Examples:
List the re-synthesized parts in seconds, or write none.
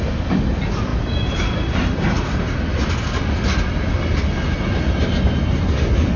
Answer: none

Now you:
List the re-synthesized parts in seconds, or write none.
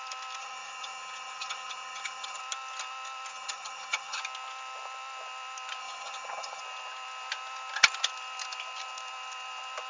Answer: 0.4-2.4; 3.3-4.2; 5.8-6.6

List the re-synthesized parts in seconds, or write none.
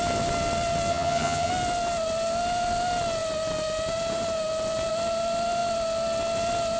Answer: 0.9-1.5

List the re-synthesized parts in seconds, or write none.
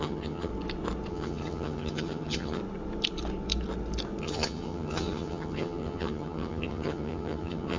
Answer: 0.0-0.5; 1.1-2.6; 4.2-7.8